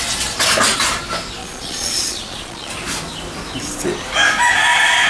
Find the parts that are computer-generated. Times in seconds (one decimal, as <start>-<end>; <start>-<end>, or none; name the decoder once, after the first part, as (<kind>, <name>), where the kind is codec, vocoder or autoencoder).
1.4-2.7 (vocoder, Vocos)